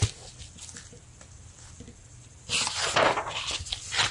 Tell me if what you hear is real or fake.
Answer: real